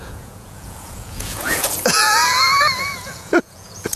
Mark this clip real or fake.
fake